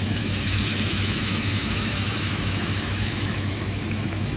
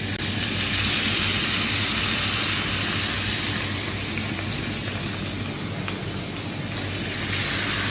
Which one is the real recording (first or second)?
second